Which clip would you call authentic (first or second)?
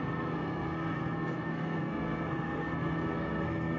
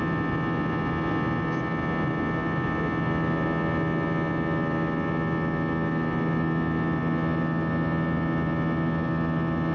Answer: second